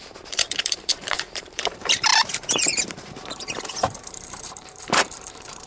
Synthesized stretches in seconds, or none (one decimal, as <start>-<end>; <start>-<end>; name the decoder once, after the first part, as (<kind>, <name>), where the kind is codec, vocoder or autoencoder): 0.0-5.7 (vocoder, BigVGAN v2)